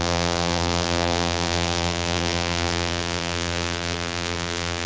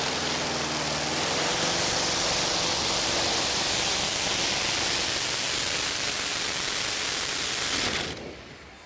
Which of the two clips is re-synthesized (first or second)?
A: first